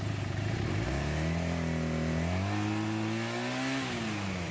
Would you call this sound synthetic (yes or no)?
no